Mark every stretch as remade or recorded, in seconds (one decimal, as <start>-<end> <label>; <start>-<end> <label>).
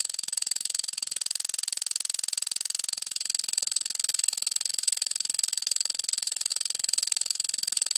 0.0-1.2 remade; 1.2-2.9 recorded; 2.9-8.0 remade